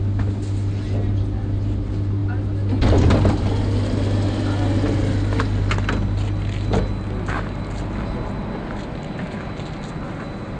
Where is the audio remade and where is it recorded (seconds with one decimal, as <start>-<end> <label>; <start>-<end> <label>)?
0.0-10.6 recorded